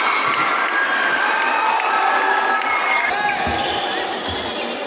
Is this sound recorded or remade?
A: recorded